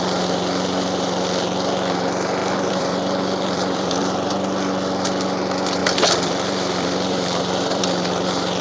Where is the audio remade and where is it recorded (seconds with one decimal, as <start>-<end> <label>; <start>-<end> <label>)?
0.0-2.4 recorded; 2.4-4.3 remade; 4.3-5.8 recorded; 5.8-7.8 remade; 7.8-8.6 recorded